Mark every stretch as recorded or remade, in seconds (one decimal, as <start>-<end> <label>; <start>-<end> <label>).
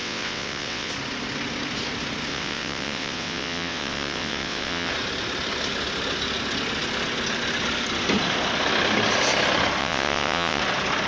0.0-0.9 remade; 0.9-2.3 recorded; 2.3-4.9 remade; 4.9-9.8 recorded; 9.8-10.6 remade; 10.6-11.1 recorded